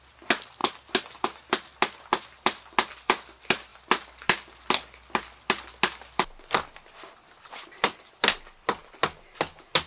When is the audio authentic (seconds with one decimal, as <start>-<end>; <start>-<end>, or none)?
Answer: 0.0-9.9